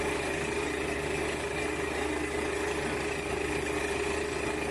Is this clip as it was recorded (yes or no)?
yes